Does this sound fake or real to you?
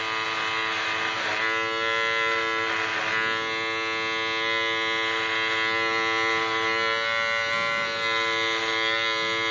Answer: real